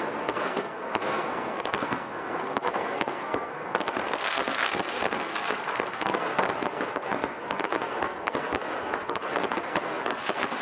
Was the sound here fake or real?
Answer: fake